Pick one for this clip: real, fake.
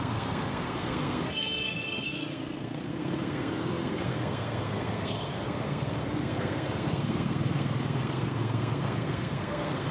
fake